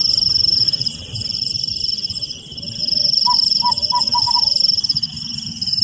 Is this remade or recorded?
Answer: remade